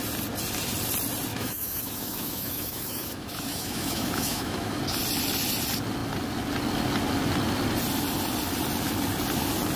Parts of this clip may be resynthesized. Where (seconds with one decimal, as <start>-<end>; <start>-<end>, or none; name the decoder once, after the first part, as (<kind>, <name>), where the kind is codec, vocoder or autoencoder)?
1.3-4.8 (autoencoder, DAC-VAE)